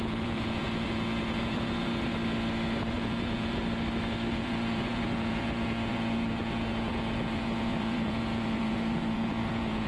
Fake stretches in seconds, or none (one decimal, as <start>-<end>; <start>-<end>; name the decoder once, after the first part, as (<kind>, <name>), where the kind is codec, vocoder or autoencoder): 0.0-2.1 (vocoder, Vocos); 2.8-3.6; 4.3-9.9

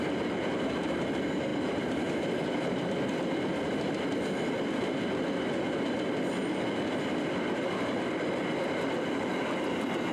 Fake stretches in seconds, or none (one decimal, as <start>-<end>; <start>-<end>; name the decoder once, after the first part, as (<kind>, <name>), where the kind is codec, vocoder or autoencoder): none

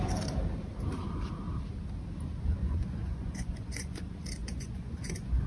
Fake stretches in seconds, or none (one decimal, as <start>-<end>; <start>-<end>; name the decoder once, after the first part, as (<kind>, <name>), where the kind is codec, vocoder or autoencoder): 2.6-4.0 (vocoder, Vocos); 4.4-5.5

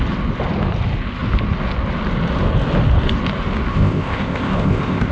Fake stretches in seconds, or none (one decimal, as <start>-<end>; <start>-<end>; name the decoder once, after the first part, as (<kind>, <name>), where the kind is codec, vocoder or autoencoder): 3.7-5.1 (codec, ZipCodec)